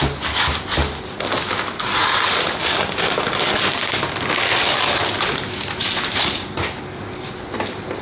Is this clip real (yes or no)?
yes